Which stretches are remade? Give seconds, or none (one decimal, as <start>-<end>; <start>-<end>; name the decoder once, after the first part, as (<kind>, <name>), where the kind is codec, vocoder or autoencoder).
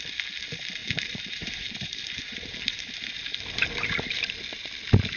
0.8-3.9 (vocoder, BigVGAN v2)